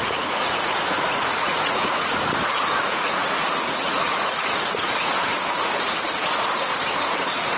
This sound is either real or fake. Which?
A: fake